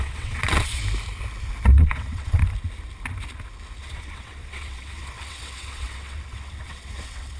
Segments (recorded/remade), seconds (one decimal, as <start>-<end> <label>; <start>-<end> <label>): 0.0-0.8 remade; 0.8-1.8 recorded; 1.8-2.4 remade; 2.4-3.8 recorded; 3.8-7.4 remade